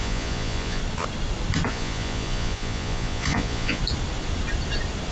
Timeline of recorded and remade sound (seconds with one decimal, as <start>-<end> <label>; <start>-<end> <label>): 0.0-0.8 remade; 0.8-1.7 recorded; 1.7-3.8 remade; 3.8-5.1 recorded